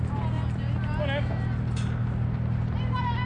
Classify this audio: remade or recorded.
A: recorded